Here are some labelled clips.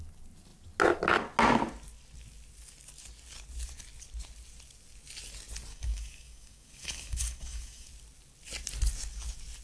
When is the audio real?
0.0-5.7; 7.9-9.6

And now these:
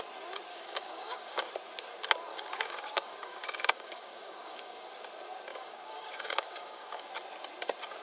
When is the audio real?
0.0-0.5; 1.5-2.3; 4.9-5.5; 7.1-8.0

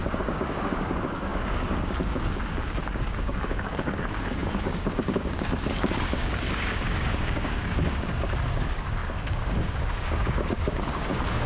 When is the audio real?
none

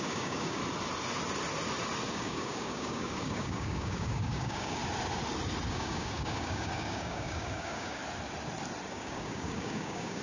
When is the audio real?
0.6-2.1; 4.8-5.7; 8.0-8.9

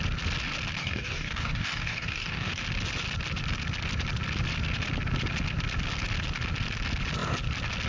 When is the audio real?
0.0-0.8; 2.6-7.9

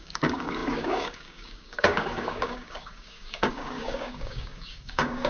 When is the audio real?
none

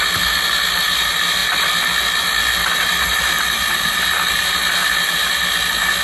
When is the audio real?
0.0-6.0

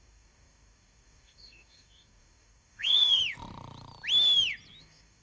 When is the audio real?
3.2-4.8